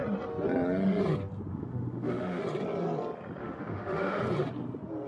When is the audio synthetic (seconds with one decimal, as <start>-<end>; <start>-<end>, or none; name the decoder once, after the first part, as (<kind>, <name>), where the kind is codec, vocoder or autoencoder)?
1.5-2.4 (autoencoder, DAC-VAE); 3.4-4.2